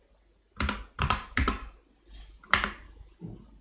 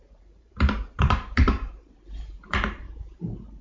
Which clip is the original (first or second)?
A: first